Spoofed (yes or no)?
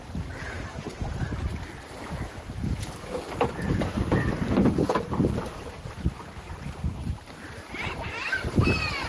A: yes